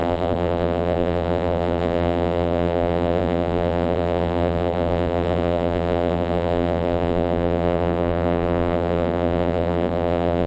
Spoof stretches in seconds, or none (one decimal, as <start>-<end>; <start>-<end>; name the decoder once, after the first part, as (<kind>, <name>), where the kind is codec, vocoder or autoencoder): 0.0-10.5 (vocoder, BigVGAN v2)